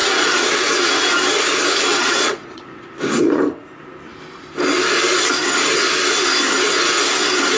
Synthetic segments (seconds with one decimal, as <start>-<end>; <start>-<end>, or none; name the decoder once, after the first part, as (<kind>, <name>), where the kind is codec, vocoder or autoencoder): 0.0-0.7 (vocoder, WaveNeXt); 1.9-3.4